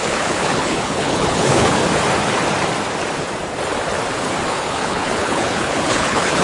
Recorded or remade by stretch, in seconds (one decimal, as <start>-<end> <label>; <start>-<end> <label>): 0.0-1.8 remade; 1.8-4.5 recorded; 4.5-6.4 remade